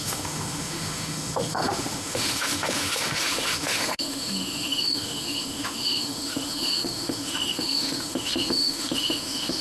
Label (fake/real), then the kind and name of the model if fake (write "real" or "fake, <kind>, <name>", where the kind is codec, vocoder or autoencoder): fake, autoencoder, DAC-VAE